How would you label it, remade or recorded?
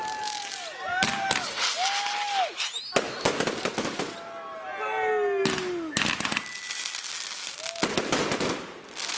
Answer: recorded